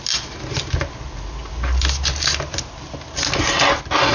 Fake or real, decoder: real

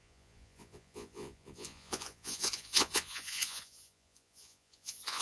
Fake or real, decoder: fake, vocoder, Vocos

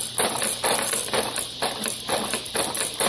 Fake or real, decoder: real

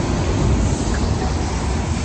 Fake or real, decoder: real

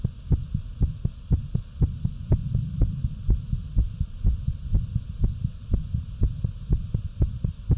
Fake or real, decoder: real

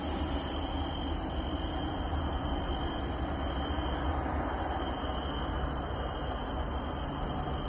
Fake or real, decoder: real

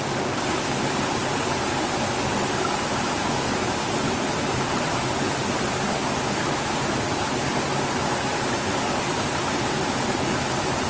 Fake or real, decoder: real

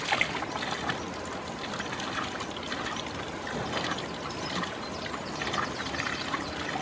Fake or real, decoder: real